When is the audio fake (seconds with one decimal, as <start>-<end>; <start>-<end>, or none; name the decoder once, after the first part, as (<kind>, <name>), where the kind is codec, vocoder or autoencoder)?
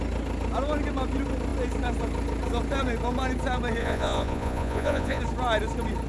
3.8-5.2 (vocoder, Vocos)